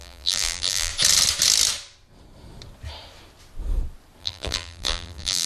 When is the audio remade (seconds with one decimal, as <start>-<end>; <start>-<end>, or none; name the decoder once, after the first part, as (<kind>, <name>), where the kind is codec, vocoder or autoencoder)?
0.0-0.9 (vocoder, BigVGAN v2); 4.2-5.5